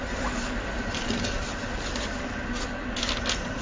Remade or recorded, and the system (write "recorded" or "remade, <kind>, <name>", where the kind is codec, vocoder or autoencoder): recorded